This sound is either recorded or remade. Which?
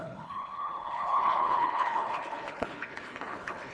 remade